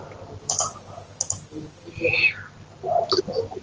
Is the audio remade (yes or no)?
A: no